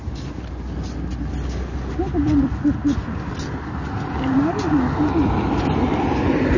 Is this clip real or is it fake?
real